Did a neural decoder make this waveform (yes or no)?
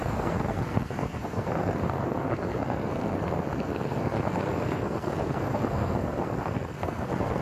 yes